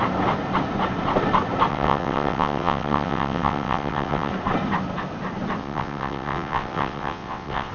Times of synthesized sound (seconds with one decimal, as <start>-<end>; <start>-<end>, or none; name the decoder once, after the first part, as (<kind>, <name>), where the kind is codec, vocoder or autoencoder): 1.7-4.3 (vocoder, WaveNeXt); 5.6-7.7